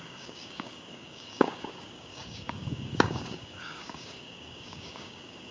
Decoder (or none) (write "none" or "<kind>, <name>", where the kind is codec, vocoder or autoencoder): codec, DAC